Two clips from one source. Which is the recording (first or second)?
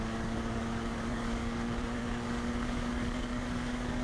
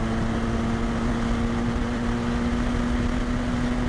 second